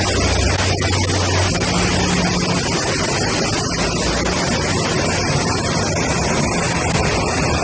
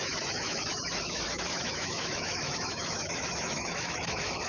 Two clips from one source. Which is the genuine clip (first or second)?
first